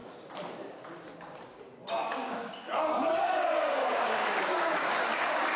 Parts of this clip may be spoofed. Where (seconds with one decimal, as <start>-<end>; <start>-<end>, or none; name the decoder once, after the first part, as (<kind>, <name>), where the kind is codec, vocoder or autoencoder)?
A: 1.9-5.6 (codec, DAC)